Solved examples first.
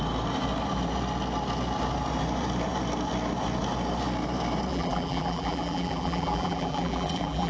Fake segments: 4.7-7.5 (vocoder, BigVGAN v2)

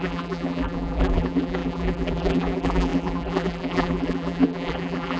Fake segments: 0.0-5.2 (vocoder, BigVGAN v2)